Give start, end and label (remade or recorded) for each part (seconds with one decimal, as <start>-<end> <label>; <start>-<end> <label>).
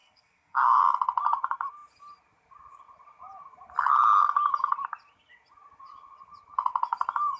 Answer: 0.0-0.8 remade; 0.8-7.4 recorded